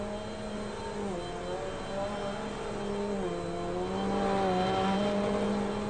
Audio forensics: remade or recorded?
recorded